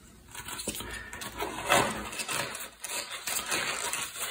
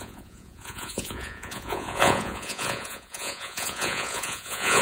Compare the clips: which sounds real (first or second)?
first